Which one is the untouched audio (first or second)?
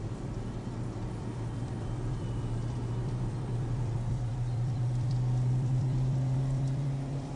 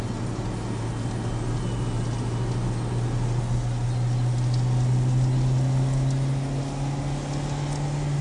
second